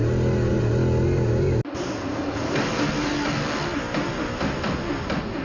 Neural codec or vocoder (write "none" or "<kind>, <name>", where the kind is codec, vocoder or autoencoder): none